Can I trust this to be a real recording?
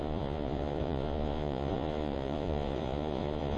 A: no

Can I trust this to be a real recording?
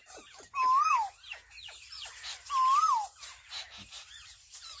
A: yes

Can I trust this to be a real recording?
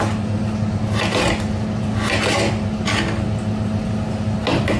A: yes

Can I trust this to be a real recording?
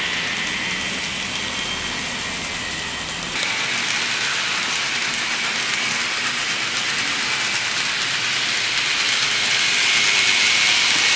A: yes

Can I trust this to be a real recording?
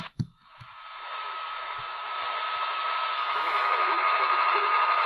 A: no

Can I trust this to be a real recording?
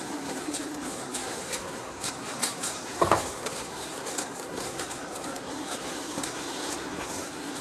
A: no